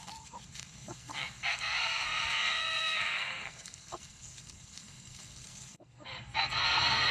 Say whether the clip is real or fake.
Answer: fake